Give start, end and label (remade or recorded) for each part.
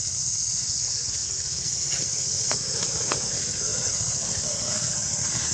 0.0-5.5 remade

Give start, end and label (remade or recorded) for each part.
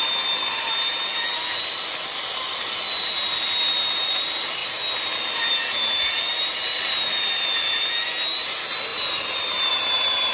0.0-10.3 recorded